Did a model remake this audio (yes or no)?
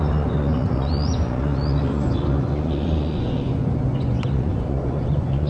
yes